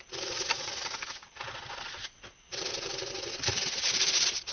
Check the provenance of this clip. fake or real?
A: fake